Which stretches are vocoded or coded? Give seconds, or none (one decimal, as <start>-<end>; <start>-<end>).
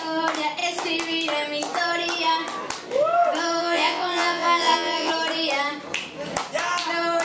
3.6-5.1